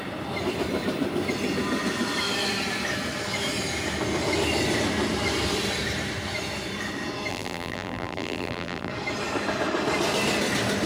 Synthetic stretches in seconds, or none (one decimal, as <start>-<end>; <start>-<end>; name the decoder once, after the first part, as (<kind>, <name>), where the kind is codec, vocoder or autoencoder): 7.3-8.9 (vocoder, BigVGAN v2)